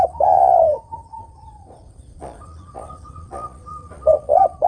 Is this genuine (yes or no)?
no